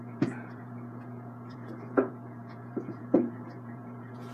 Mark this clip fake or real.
fake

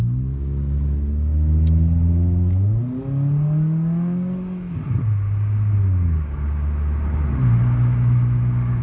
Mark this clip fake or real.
real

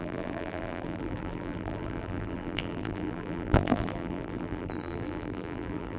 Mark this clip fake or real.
fake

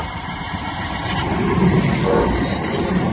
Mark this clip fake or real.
fake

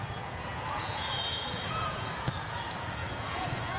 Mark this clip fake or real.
fake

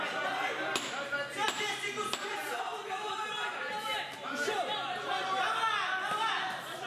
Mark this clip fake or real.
real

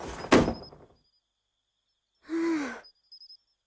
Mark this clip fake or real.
real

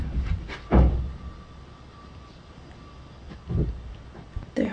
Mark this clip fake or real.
real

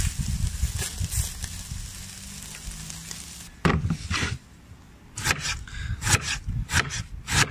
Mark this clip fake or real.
real